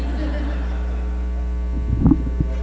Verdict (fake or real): real